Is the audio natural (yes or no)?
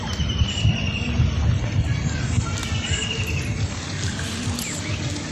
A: yes